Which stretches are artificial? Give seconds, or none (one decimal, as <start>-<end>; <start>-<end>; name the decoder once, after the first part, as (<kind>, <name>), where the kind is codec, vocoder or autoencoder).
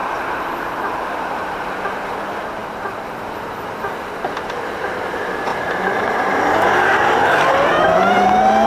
0.0-1.4 (vocoder, BigVGAN v2); 2.2-8.7